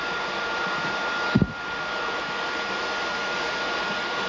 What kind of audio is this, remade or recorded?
recorded